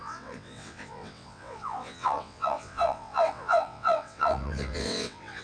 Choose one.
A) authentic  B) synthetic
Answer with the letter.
B